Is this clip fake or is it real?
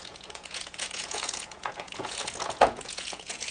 fake